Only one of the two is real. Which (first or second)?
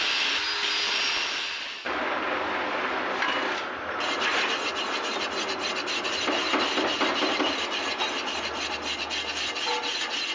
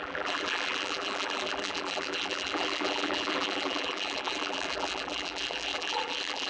first